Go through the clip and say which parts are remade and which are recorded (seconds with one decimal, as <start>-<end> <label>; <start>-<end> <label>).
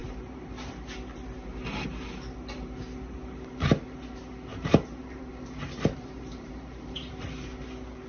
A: 0.0-0.9 remade; 0.9-4.5 recorded; 4.5-7.1 remade; 7.1-8.1 recorded